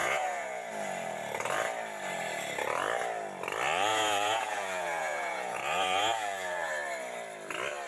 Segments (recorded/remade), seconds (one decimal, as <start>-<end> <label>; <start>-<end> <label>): 0.0-0.7 remade; 0.7-3.9 recorded; 3.9-6.7 remade; 6.7-7.9 recorded